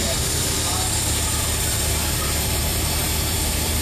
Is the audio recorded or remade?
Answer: remade